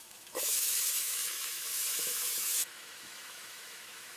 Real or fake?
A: fake